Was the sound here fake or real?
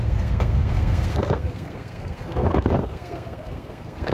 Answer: fake